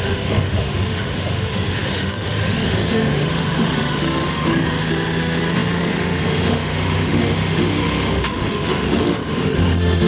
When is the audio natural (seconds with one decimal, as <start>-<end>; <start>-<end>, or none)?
none